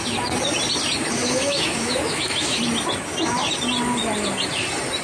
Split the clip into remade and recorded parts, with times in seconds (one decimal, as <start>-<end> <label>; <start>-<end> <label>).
0.0-1.2 recorded; 1.2-2.6 remade; 2.6-5.0 recorded